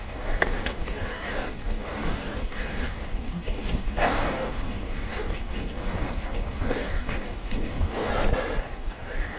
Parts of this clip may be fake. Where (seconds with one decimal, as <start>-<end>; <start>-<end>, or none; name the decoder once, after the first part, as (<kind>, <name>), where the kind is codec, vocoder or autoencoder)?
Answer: 0.0-8.1 (codec, DAC); 8.6-9.4